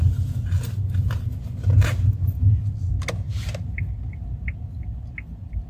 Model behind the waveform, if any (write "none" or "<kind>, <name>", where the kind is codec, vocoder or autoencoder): none